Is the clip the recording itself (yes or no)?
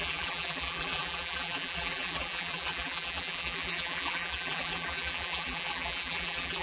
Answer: no